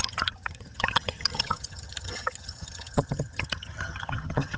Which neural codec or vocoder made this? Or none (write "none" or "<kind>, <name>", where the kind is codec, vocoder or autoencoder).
vocoder, HiFi-GAN